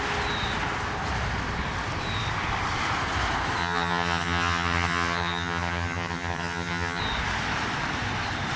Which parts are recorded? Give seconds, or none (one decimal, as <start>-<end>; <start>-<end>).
0.0-3.6; 7.0-8.6